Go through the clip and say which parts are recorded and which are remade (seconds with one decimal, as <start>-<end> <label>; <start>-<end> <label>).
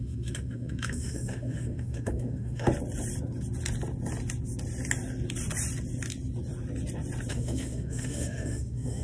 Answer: 0.0-2.7 remade; 2.7-7.3 recorded; 7.3-9.0 remade